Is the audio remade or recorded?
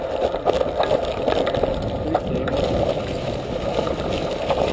recorded